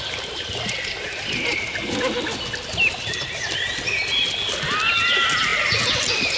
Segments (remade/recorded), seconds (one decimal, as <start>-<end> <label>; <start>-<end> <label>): 0.0-6.4 recorded